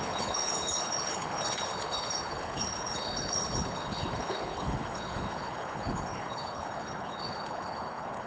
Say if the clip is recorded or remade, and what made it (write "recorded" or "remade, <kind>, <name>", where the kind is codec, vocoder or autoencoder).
remade, codec, HILCodec